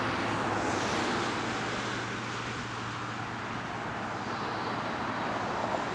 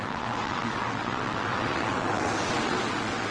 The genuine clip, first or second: first